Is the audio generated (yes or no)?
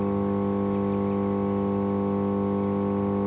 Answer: no